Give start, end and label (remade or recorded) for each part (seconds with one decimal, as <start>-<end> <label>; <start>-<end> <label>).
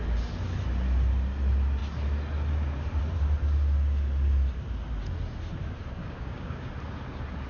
0.0-6.0 recorded; 6.0-6.7 remade; 6.7-7.5 recorded